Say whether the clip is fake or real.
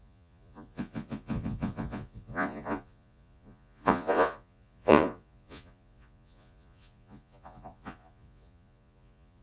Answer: fake